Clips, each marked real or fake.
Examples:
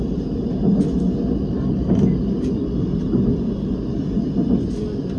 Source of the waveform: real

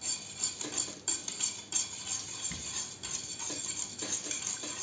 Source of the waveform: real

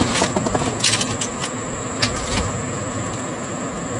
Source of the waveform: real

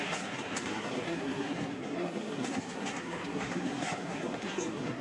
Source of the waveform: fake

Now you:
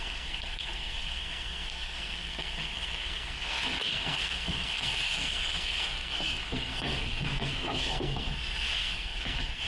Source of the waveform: fake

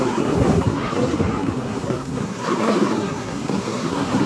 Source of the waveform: fake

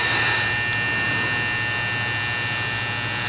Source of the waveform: real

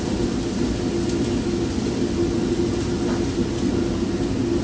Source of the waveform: real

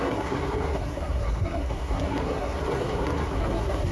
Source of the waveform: fake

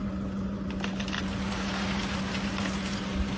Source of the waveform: real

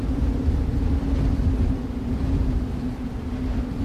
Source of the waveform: real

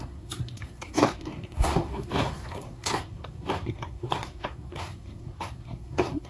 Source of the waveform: fake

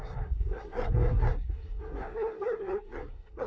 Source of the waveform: fake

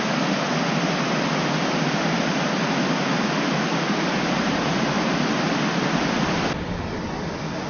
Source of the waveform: real